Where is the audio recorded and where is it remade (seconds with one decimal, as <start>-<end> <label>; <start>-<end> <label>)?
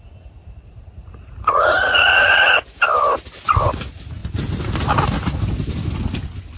0.0-0.4 recorded; 0.4-2.6 remade; 2.6-6.6 recorded